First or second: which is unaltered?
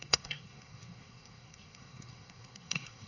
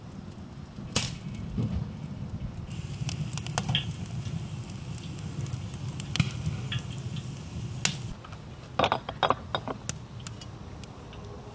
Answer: second